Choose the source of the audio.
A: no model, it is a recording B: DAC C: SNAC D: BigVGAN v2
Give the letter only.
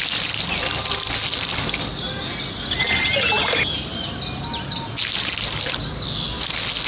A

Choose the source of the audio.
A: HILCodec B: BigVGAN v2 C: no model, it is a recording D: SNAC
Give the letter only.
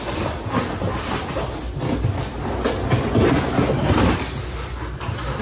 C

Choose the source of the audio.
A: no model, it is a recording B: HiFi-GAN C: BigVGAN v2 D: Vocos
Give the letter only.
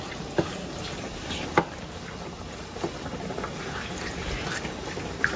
A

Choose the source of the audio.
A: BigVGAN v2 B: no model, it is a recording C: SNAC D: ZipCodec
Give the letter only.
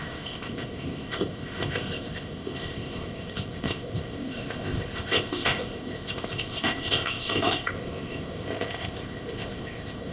D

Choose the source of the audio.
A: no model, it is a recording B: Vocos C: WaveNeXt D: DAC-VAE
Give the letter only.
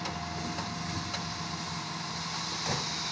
A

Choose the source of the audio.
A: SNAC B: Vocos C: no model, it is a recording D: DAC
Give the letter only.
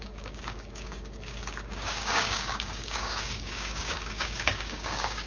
D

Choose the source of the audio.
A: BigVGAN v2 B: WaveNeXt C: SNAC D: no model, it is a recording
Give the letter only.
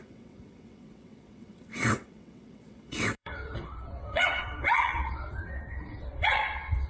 B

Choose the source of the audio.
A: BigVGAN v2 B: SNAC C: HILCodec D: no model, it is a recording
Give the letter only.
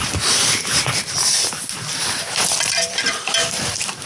A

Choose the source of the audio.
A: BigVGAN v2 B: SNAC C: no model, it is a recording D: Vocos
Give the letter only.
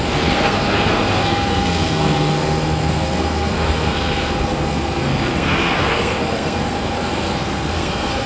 B